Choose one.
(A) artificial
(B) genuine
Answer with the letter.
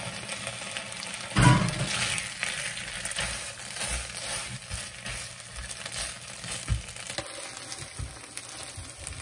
B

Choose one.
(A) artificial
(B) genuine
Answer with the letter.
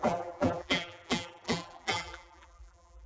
A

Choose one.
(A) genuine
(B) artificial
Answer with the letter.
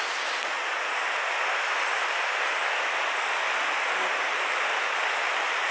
A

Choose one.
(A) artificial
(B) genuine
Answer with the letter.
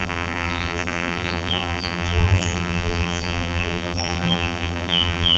A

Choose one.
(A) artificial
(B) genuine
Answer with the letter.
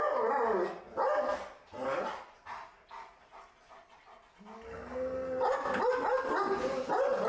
B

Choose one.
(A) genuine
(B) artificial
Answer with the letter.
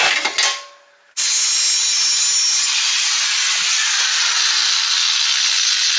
A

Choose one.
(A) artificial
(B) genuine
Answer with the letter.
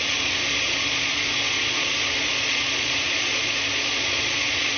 A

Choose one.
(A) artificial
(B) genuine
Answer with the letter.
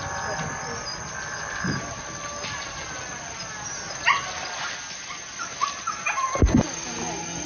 B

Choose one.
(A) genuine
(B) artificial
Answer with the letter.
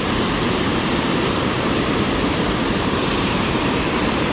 B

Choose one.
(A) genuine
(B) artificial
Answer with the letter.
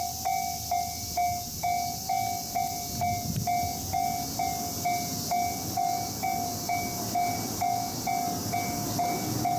A